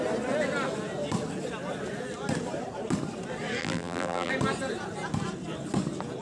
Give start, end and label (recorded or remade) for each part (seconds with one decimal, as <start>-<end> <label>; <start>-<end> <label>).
0.0-3.6 recorded; 3.6-4.3 remade; 4.3-6.2 recorded